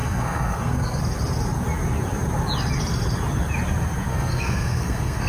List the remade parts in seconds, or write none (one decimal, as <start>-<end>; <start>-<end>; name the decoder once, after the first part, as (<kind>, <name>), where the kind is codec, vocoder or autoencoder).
0.0-1.0 (codec, SNAC); 4.1-5.3

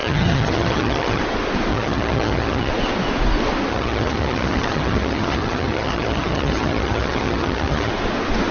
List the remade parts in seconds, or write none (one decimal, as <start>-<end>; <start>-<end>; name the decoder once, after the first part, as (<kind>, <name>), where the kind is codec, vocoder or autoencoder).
0.0-1.2 (vocoder, HiFi-GAN); 1.7-2.7; 3.7-7.9

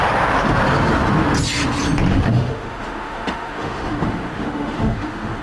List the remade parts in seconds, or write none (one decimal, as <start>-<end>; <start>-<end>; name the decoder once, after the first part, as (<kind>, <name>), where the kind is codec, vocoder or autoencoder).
2.1-5.4 (autoencoder, DAC-VAE)

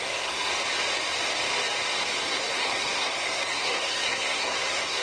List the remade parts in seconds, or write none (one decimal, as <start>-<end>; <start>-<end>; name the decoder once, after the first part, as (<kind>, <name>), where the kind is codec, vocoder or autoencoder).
0.0-0.5 (codec, SNAC); 2.2-5.0

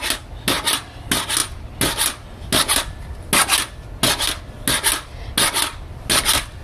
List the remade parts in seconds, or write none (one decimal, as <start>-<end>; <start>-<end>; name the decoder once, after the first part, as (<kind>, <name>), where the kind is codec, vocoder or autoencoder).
none

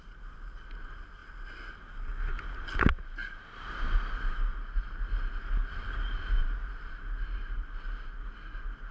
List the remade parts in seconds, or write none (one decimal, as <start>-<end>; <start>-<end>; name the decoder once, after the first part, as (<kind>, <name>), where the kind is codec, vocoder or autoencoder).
3.2-5.0 (vocoder, BigVGAN v2); 6.4-8.3

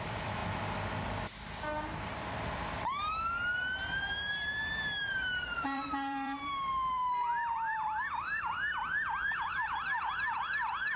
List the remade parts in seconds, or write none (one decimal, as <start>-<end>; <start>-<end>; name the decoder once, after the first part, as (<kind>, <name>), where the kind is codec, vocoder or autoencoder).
0.0-0.4 (vocoder, BigVGAN v2); 5.1-11.0

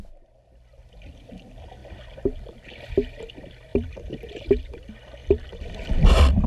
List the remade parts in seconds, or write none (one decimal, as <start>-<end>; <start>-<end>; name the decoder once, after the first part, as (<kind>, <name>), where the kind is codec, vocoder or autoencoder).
3.7-4.3 (vocoder, BigVGAN v2); 5.2-6.5